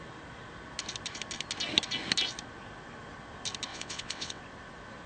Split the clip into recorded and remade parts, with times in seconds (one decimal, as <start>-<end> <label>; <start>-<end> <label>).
0.0-3.7 recorded; 3.7-4.4 remade; 4.4-5.1 recorded

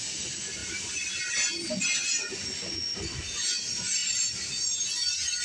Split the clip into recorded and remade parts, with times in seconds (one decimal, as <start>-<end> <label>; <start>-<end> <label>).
0.0-5.4 recorded

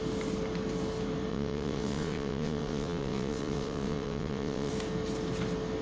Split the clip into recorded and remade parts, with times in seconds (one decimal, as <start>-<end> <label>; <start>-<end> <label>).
0.0-1.3 recorded; 1.3-4.7 remade; 4.7-5.8 recorded

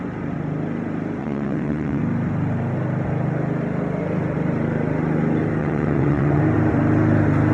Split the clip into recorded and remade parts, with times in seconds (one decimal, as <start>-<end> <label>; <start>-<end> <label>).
0.0-1.2 recorded; 1.2-2.0 remade; 2.0-5.6 recorded; 5.6-6.4 remade; 6.4-7.5 recorded

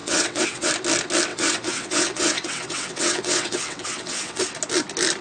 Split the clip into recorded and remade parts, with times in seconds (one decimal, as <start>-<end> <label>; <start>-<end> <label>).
0.0-0.7 remade; 0.7-1.3 recorded; 1.3-4.4 remade; 4.4-5.2 recorded

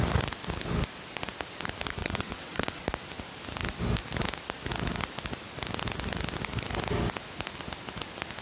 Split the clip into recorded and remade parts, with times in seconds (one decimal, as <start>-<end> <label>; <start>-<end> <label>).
0.0-2.0 recorded; 2.0-2.8 remade; 2.8-8.4 recorded

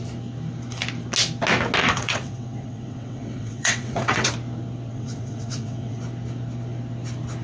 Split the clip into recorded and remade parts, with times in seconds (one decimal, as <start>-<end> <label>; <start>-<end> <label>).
0.0-1.8 recorded; 1.8-4.3 remade; 4.3-4.9 recorded; 4.9-6.0 remade; 6.0-7.4 recorded